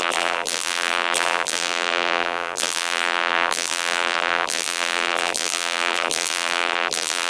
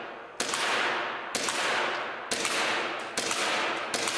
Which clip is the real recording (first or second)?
second